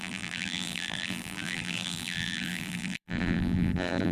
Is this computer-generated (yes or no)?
yes